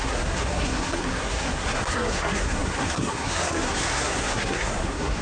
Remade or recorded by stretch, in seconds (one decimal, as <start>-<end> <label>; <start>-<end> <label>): 0.0-5.2 remade